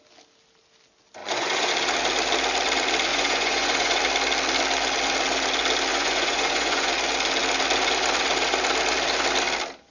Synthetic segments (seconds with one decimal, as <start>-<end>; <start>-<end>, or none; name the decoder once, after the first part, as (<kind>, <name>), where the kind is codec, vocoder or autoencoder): 1.2-1.7 (vocoder, Vocos); 3.1-4.0; 5.9-6.9

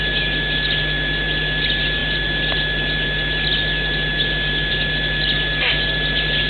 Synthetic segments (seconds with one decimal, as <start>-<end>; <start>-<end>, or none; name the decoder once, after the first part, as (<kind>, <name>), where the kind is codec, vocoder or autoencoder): none

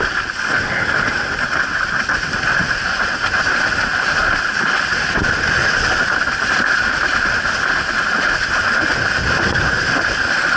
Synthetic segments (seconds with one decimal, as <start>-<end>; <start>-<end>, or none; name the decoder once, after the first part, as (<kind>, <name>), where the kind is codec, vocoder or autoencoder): none

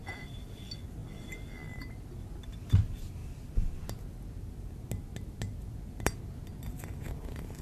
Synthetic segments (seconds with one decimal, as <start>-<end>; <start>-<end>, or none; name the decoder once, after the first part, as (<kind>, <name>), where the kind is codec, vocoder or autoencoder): none